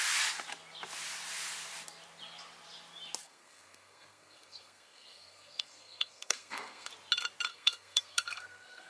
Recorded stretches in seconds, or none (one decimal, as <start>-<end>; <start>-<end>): 0.0-3.2; 6.9-7.5